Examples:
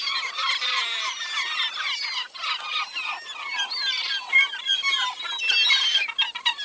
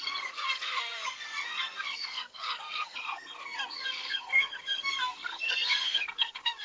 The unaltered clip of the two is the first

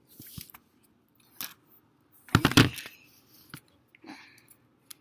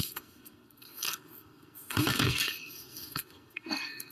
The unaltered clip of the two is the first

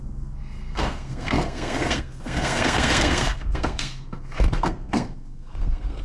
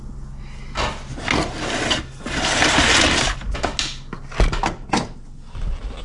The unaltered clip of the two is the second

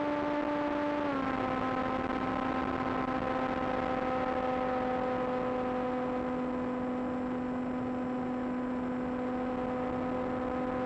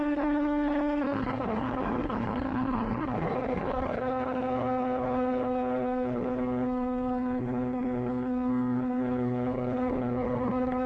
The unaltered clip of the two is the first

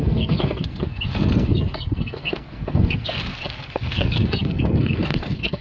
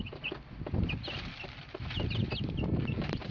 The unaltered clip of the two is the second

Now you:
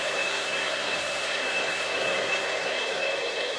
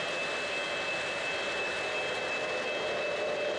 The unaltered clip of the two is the second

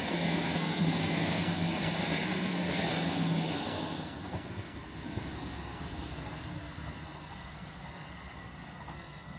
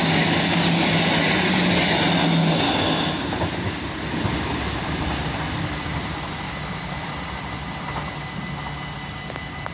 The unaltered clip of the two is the second